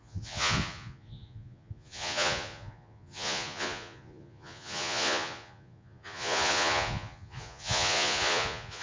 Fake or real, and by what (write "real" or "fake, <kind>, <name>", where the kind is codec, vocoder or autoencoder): fake, vocoder, Vocos